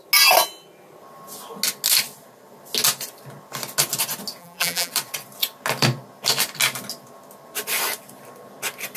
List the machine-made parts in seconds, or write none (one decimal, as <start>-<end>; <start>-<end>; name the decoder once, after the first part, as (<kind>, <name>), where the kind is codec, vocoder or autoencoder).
4.4-4.9 (vocoder, BigVGAN v2)